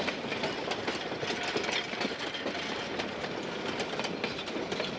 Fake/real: real